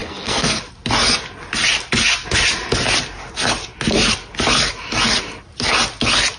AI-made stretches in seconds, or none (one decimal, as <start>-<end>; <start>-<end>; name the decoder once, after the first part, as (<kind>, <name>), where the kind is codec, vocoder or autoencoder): 0.0-0.6 (codec, SNAC)